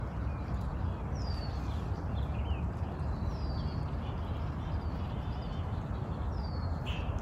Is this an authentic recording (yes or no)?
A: yes